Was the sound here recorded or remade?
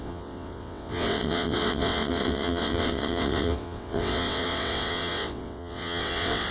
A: remade